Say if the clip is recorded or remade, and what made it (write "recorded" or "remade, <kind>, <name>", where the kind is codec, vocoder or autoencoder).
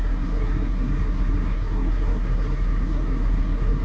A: remade, codec, SNAC